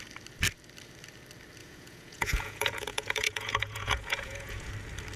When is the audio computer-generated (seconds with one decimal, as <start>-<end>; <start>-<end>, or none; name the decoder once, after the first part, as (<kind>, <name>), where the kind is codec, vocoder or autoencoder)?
1.6-4.7 (vocoder, Vocos)